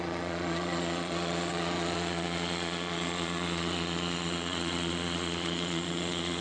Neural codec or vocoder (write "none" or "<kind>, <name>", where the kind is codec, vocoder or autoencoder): vocoder, Vocos